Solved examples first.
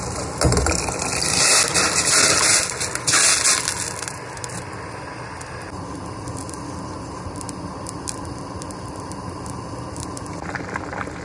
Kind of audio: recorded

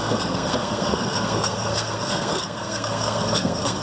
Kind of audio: remade